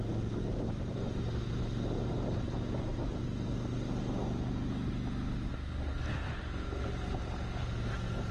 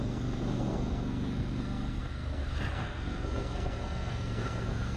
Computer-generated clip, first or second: second